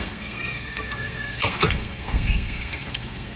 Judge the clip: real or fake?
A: fake